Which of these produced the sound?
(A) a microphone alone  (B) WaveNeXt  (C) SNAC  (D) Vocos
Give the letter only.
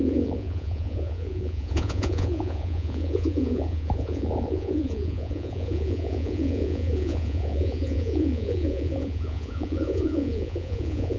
D